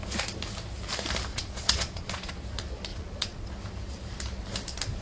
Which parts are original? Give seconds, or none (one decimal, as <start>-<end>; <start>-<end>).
0.0-1.3; 2.3-2.9; 3.5-5.0